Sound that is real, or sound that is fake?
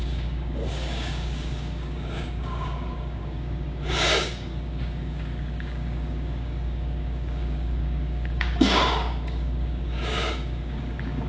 fake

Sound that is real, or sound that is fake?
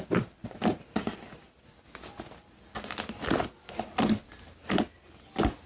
real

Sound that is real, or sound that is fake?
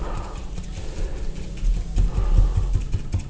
real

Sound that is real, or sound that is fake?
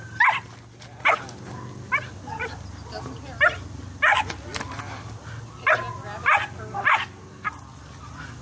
real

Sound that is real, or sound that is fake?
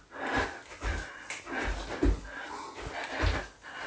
real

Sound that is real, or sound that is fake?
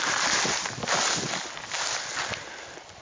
real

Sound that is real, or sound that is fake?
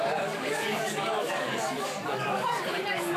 fake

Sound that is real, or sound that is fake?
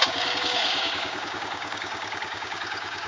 fake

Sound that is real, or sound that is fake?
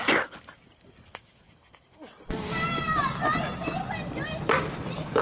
real